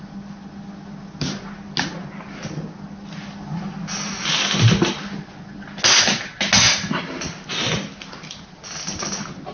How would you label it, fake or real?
real